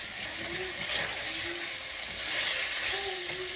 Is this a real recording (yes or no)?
yes